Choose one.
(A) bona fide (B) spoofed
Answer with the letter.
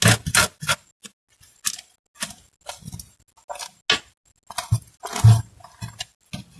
A